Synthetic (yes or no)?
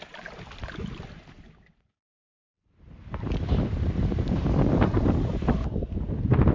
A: no